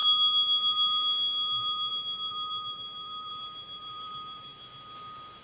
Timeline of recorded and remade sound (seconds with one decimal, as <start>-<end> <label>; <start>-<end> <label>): 0.0-1.9 recorded; 1.9-4.5 remade; 4.5-5.4 recorded